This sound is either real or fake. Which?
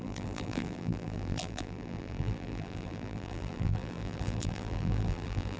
fake